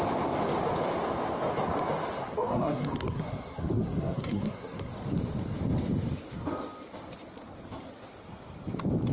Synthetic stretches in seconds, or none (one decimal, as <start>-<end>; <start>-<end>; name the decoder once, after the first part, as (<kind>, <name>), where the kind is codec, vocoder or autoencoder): 2.2-4.9 (codec, SNAC)